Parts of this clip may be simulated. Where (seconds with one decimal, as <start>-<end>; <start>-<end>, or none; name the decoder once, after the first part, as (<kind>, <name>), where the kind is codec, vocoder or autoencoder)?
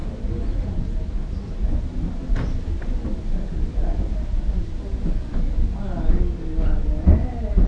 none